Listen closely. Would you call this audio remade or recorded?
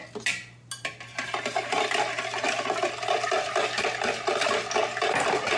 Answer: recorded